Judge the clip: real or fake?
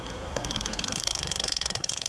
fake